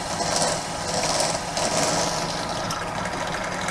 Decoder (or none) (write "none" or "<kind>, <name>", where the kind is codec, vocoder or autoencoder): none